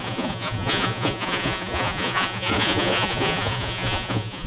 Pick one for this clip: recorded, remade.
remade